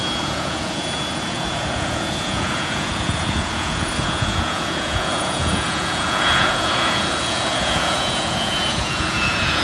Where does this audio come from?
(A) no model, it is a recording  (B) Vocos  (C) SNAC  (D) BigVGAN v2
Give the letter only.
B